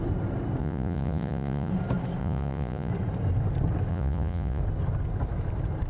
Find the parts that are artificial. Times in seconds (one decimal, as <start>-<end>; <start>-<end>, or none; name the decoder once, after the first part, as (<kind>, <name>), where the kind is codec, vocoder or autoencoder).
0.6-1.7 (vocoder, Vocos); 2.2-2.9; 3.9-4.6